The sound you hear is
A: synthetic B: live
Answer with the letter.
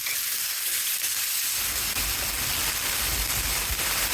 B